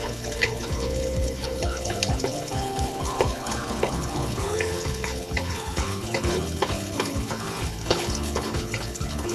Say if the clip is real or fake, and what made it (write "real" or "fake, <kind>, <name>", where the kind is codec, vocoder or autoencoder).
fake, codec, HILCodec